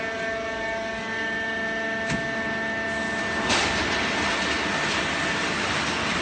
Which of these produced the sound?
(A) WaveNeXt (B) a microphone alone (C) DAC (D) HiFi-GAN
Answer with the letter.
B